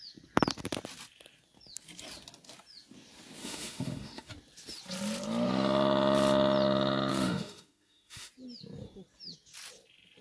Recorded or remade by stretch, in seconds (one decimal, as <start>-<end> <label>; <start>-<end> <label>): 0.0-3.4 recorded; 3.4-4.3 remade; 4.3-7.1 recorded; 7.1-8.3 remade; 8.3-10.2 recorded